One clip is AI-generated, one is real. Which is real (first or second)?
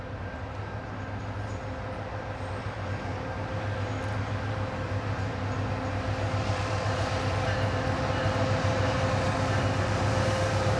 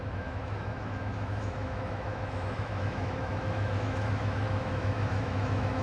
first